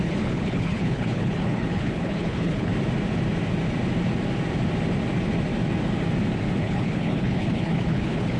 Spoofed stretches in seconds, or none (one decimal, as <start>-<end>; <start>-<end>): 0.0-2.7; 6.6-8.4